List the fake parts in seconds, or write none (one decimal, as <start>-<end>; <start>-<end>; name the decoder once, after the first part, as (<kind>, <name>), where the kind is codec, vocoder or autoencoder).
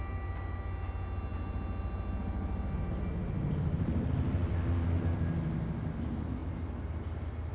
none